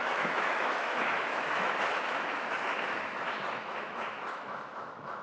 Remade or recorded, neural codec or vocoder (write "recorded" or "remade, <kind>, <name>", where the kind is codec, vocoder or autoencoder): remade, autoencoder, DAC-VAE